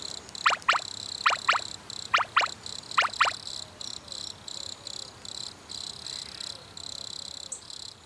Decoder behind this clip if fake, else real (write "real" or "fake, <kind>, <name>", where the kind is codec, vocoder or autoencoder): real